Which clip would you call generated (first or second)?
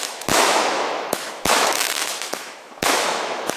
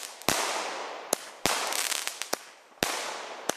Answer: first